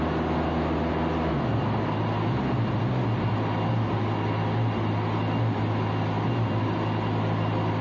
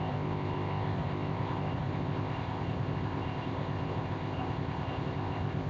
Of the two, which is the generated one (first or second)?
second